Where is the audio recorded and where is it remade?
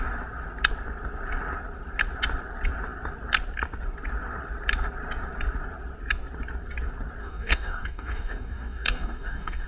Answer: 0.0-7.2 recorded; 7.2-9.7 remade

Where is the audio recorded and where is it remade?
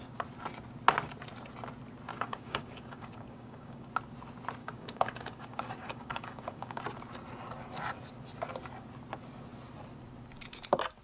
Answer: 0.0-2.1 recorded; 2.1-3.9 remade; 3.9-4.6 recorded; 4.6-6.8 remade; 6.8-11.0 recorded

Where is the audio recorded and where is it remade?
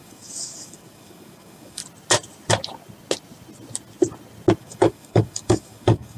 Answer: 0.0-1.8 remade; 1.8-4.6 recorded; 4.6-6.2 remade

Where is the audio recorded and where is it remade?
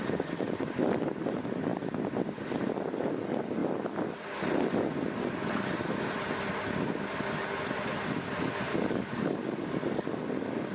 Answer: 0.0-8.7 recorded; 8.7-10.2 remade; 10.2-10.7 recorded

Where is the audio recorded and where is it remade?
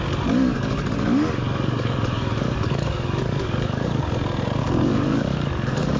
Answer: 0.0-0.4 recorded; 0.4-4.0 remade; 4.0-4.6 recorded; 4.6-6.0 remade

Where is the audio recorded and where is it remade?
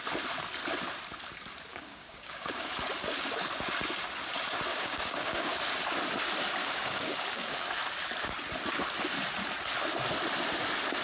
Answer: 0.0-1.7 recorded; 1.7-2.7 remade; 2.7-4.7 recorded; 4.7-5.6 remade; 5.6-6.6 recorded; 6.6-7.6 remade; 7.6-11.0 recorded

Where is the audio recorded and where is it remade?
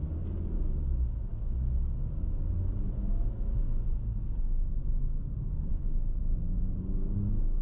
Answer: 0.0-5.0 recorded; 5.0-5.7 remade; 5.7-7.6 recorded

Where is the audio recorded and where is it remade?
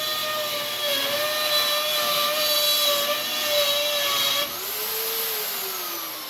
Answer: 0.0-6.3 recorded